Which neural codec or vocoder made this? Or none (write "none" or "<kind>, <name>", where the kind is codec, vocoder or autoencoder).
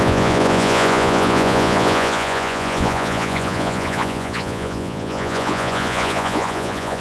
vocoder, Vocos